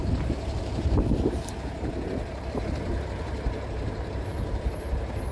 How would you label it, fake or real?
fake